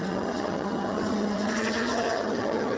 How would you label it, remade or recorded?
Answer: remade